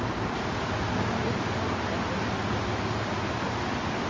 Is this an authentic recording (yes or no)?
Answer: yes